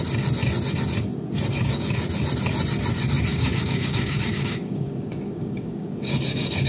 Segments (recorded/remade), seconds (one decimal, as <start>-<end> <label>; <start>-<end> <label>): 0.0-3.3 recorded; 3.3-6.1 remade; 6.1-6.7 recorded